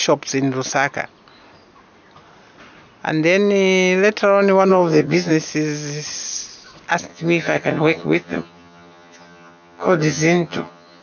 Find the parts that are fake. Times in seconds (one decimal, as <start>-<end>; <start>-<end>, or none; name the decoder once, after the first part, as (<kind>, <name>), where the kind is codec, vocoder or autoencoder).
4.7-5.3 (vocoder, HiFi-GAN); 7.1-11.0